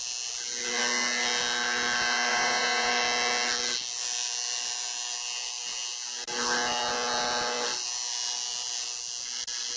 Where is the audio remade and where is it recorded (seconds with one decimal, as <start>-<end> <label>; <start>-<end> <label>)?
0.0-2.3 recorded; 2.3-2.9 remade; 2.9-9.8 recorded